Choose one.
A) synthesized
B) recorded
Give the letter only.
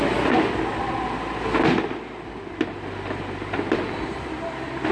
B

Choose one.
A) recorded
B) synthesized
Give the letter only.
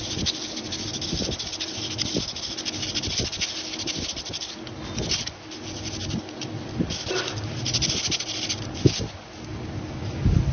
A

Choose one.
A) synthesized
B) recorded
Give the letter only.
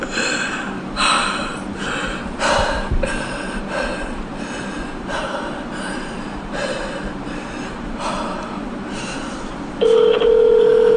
A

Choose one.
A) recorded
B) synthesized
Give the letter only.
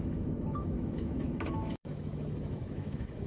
B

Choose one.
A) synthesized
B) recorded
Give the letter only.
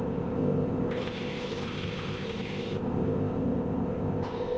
A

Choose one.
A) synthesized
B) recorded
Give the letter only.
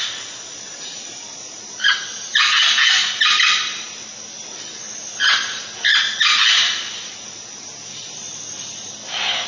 B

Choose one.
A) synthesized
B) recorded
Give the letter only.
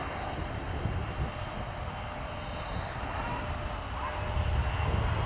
B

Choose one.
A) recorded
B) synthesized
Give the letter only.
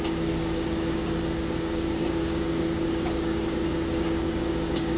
B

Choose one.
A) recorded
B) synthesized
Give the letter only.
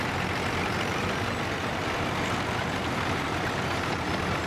A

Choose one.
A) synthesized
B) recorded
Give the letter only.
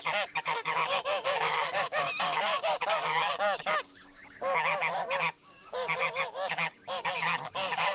A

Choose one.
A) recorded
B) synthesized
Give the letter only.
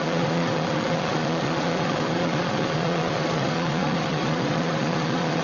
B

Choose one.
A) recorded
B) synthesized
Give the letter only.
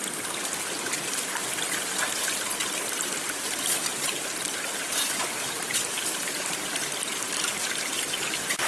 A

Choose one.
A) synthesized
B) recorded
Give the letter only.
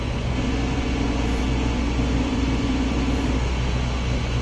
A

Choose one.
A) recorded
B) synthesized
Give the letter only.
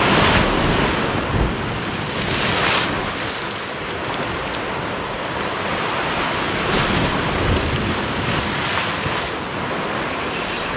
A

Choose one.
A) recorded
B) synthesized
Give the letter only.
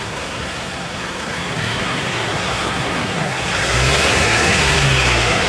B